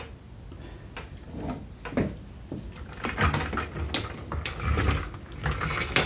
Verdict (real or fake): real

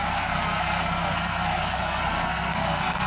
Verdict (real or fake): fake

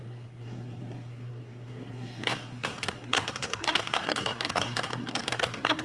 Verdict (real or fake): fake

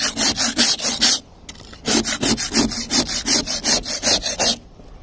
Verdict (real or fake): real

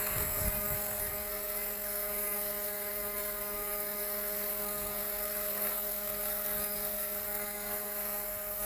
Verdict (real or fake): fake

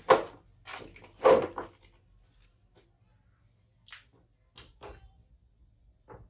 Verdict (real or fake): real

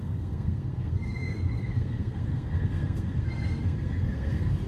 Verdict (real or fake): fake